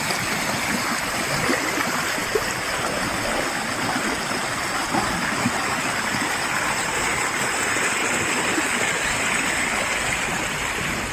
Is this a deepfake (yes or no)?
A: no